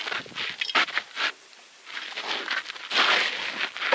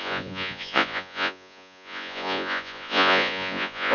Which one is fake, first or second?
second